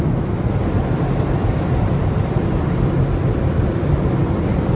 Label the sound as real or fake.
real